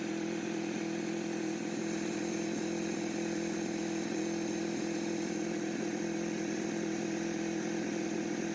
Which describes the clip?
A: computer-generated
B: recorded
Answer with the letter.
B